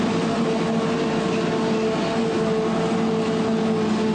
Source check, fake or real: real